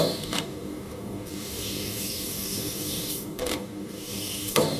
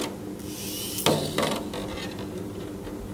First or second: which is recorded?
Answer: second